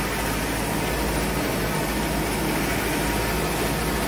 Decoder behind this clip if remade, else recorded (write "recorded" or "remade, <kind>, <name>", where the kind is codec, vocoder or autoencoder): recorded